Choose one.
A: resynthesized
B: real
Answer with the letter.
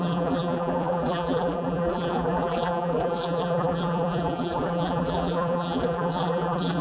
A